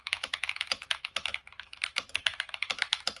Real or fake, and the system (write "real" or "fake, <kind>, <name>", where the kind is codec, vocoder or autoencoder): fake, autoencoder, DAC-VAE